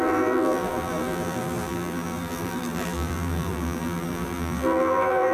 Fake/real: fake